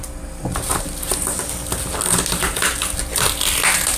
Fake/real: real